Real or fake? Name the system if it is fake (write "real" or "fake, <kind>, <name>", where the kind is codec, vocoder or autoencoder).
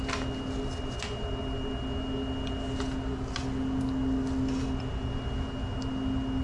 real